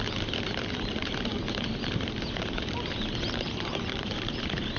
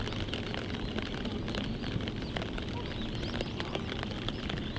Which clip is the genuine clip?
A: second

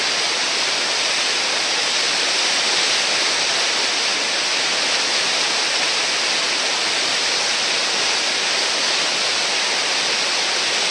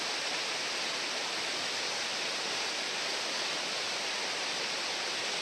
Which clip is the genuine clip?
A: first